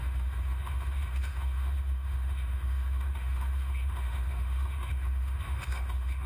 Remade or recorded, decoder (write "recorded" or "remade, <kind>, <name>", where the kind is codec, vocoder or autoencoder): remade, autoencoder, DAC-VAE